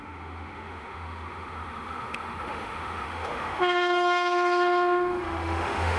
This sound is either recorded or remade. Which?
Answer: remade